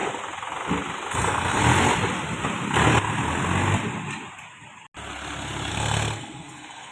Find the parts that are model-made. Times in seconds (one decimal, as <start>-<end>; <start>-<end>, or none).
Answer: 1.1-1.6; 5.7-6.9